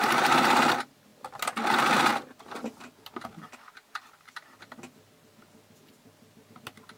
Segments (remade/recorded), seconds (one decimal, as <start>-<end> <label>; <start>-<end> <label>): 0.0-7.0 recorded